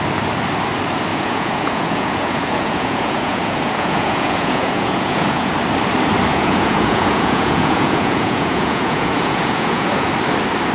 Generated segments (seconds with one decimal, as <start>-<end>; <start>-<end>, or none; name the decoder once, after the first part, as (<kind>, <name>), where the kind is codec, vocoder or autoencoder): 1.1-5.5 (vocoder, Vocos); 6.3-10.1